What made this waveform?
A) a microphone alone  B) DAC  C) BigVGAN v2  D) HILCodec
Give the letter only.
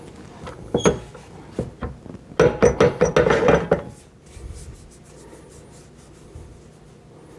A